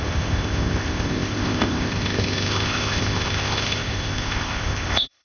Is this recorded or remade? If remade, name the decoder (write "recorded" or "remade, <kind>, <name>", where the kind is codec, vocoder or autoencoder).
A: remade, codec, ZipCodec